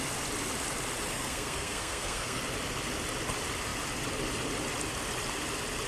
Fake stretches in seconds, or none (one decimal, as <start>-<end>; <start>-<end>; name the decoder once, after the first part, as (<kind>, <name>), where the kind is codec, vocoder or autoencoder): 1.1-2.4 (codec, SNAC)

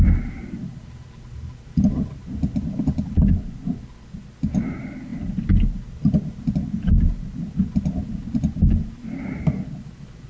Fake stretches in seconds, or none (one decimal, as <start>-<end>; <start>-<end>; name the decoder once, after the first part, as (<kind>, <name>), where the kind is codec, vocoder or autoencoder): none

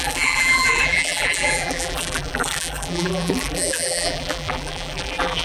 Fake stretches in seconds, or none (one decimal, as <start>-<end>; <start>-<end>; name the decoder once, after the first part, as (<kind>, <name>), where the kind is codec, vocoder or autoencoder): 0.0-5.4 (vocoder, BigVGAN v2)

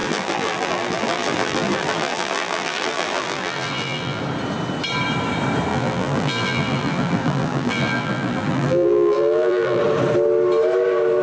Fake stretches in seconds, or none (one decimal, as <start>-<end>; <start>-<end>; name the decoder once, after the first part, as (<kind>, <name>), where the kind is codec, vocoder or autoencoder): 0.0-4.2 (vocoder, BigVGAN v2); 5.7-9.8

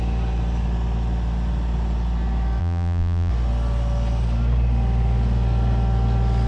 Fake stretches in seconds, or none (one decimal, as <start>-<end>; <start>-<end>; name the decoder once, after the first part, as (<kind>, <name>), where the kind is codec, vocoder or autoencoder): 2.6-3.3 (vocoder, BigVGAN v2)